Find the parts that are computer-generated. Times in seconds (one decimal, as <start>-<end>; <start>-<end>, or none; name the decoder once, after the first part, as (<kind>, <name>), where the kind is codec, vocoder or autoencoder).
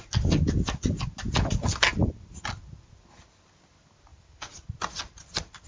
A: 4.1-4.8 (vocoder, BigVGAN v2)